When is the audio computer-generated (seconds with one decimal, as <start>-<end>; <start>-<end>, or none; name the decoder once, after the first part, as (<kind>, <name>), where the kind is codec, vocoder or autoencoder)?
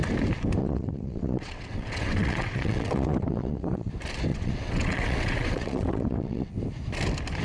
0.6-3.9 (vocoder, WaveNeXt); 4.3-6.5